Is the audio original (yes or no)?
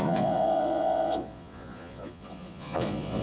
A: no